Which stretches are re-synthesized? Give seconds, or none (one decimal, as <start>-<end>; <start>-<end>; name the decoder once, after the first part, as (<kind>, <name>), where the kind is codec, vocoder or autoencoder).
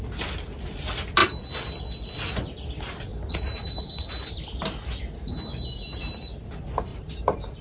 3.1-3.8 (vocoder, BigVGAN v2); 6.9-7.6